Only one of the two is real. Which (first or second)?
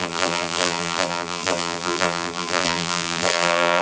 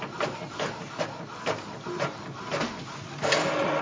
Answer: second